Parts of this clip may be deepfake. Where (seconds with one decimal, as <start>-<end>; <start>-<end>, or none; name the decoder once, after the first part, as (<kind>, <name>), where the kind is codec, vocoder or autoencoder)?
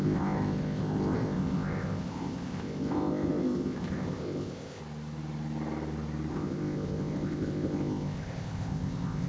0.0-4.8 (codec, ZipCodec); 6.3-9.3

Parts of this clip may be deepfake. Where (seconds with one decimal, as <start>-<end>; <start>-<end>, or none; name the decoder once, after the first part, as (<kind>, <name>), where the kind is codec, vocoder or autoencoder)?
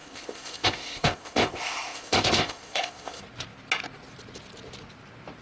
0.0-3.2 (codec, ZipCodec)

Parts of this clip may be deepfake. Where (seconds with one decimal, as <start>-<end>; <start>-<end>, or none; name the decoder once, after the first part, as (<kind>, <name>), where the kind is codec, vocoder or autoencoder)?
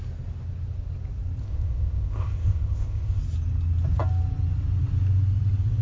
1.4-3.2 (codec, ZipCodec)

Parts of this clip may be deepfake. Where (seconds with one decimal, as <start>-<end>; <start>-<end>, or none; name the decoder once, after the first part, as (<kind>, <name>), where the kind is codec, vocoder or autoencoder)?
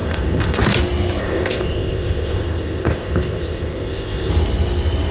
0.0-0.6 (codec, ZipCodec); 1.2-4.3